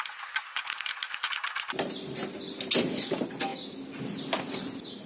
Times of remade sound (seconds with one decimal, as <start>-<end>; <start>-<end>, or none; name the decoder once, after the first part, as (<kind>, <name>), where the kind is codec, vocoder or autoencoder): none